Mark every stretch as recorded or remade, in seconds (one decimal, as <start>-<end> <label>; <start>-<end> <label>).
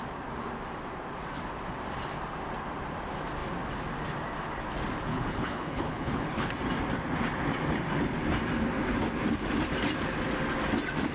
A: 0.0-5.1 recorded; 5.1-6.5 remade; 6.5-11.1 recorded